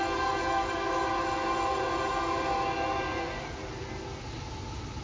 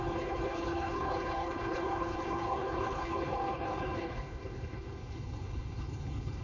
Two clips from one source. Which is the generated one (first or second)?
second